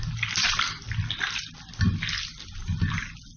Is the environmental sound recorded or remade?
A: recorded